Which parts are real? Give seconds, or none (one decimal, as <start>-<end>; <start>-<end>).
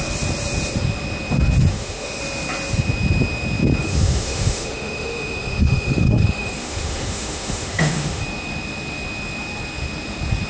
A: 0.0-1.7; 2.2-3.8; 8.2-10.5